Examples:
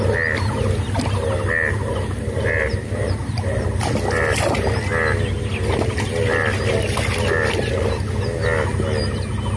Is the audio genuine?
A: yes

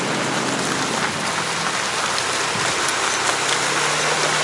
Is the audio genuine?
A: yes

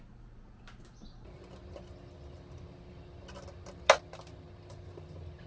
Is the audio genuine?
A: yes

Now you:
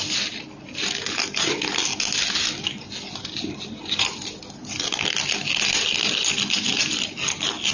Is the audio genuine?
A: yes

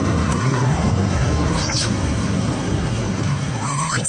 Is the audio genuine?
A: no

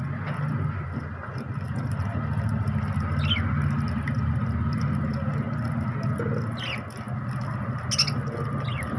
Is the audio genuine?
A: yes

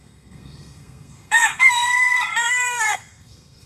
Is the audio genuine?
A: no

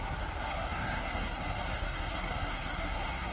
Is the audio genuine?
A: no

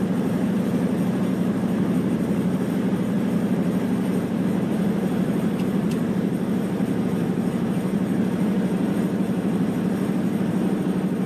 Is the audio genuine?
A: no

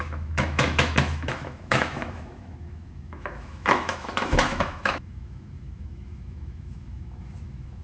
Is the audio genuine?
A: no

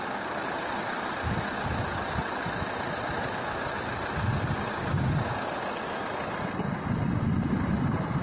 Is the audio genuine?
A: yes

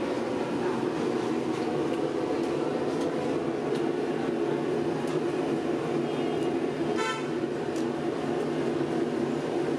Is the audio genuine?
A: yes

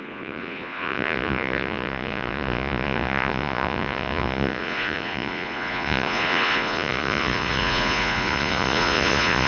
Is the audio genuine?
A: no